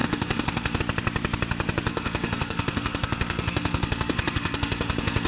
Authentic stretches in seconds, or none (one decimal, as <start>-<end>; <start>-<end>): 0.8-1.9